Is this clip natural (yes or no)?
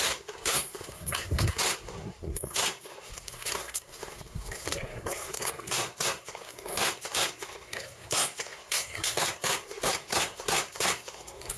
no